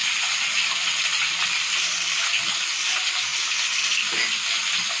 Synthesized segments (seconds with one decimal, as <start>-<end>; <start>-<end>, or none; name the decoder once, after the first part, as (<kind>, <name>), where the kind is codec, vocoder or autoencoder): 0.0-0.5 (vocoder, BigVGAN v2); 1.1-2.2; 3.3-4.3